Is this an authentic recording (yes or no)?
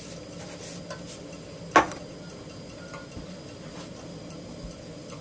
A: yes